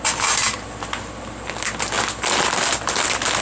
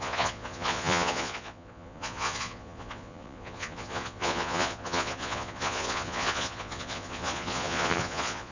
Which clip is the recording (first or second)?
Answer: first